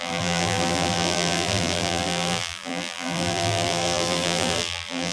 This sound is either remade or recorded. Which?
remade